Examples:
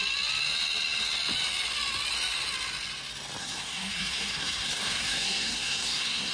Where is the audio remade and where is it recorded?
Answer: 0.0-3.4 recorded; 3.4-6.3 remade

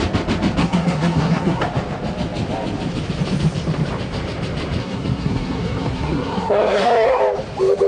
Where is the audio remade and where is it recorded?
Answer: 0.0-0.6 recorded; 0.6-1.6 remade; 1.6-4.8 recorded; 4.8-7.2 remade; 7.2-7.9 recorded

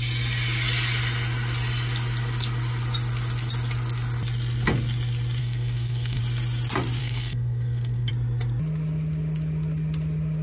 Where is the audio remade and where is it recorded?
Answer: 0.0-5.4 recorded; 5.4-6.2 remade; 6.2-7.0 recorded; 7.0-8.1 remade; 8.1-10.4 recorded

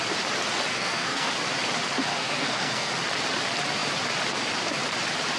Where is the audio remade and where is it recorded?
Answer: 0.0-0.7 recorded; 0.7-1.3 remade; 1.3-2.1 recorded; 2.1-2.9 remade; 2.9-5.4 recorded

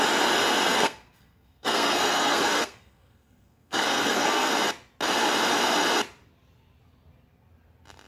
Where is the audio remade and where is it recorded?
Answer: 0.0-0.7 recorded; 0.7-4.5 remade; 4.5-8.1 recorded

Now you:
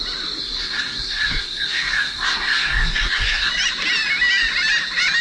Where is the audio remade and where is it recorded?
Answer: 0.0-0.4 recorded; 0.4-3.5 remade; 3.5-5.2 recorded